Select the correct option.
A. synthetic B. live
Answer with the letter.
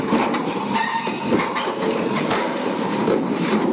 A